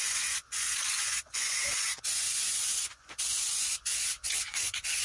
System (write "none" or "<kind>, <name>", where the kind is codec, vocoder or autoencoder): vocoder, Vocos